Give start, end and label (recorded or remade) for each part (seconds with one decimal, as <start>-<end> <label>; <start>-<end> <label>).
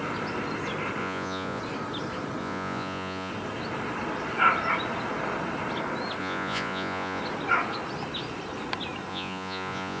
0.0-1.0 recorded; 1.0-1.6 remade; 1.6-2.4 recorded; 2.4-3.3 remade; 3.3-6.2 recorded; 6.2-7.2 remade; 7.2-9.1 recorded; 9.1-10.0 remade